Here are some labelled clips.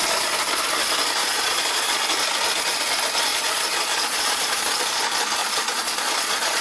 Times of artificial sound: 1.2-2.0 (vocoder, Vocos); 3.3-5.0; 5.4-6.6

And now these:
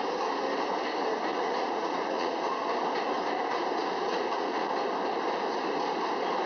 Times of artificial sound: 1.3-2.4 (vocoder, Vocos); 3.8-4.7

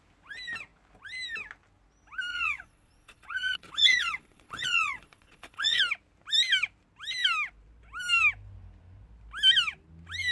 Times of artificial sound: 2.3-5.8 (vocoder, Vocos)

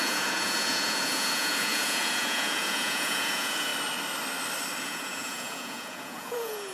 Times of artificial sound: 0.0-3.7 (vocoder, Vocos); 4.8-6.7

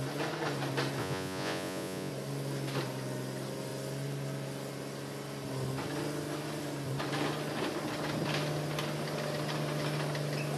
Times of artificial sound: 1.0-2.1 (vocoder, Vocos)

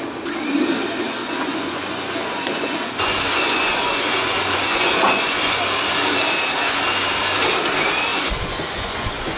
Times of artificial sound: 1.2-5.6 (vocoder, Vocos); 8.1-9.4

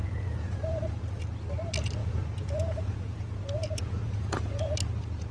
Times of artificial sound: 0.0-0.7 (vocoder, Vocos); 2.0-4.6

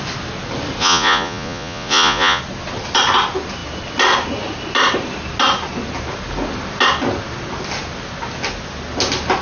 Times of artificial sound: 0.8-2.4 (vocoder, Vocos)